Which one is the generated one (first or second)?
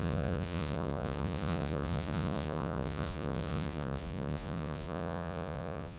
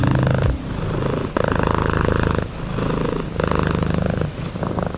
first